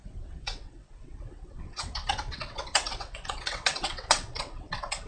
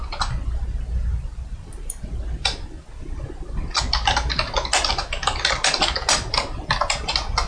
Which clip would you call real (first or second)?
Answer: second